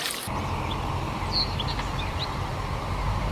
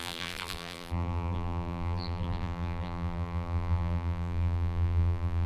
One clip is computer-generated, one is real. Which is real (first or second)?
first